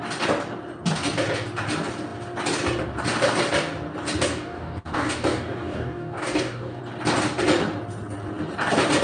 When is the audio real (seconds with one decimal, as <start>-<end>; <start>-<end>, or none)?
0.0-4.3; 6.8-9.0